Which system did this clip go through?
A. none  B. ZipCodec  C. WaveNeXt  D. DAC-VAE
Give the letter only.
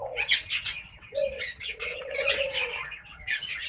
C